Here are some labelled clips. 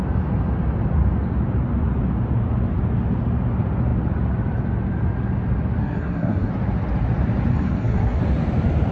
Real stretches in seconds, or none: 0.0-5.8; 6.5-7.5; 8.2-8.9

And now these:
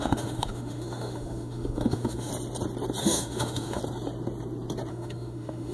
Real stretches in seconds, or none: 2.3-3.0; 3.8-4.9

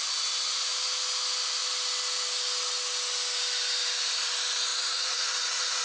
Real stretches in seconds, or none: 0.0-4.7

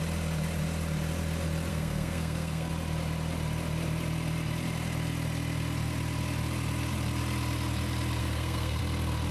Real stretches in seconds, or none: 0.0-1.7; 2.7-8.2; 8.8-9.3